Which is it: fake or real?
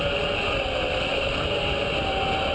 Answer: real